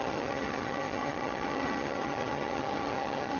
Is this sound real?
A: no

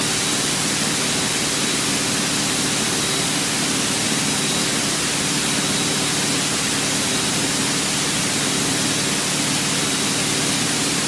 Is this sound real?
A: yes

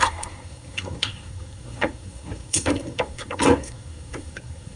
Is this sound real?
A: no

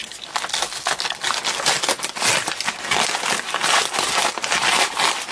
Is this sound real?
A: yes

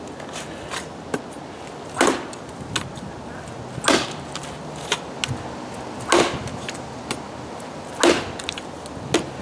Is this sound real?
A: yes